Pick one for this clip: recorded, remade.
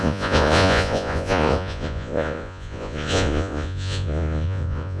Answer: remade